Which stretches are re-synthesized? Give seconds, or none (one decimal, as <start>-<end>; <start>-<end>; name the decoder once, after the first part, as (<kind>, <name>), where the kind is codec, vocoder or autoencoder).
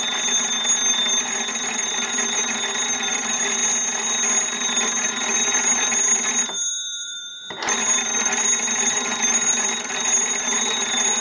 0.0-3.6 (vocoder, BigVGAN v2); 4.4-11.2